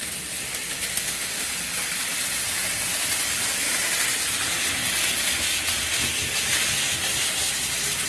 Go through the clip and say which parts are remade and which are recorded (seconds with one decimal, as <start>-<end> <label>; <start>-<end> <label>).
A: 0.0-0.9 recorded; 0.9-1.5 remade; 1.5-8.1 recorded